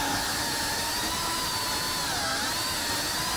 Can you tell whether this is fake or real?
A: real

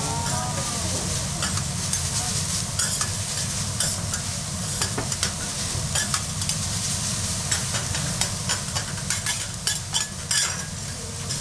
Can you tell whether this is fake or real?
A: real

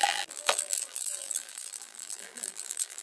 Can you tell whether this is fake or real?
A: fake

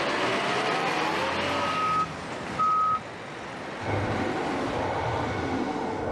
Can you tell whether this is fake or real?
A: real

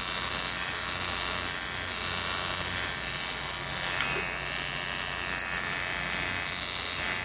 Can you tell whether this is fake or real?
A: real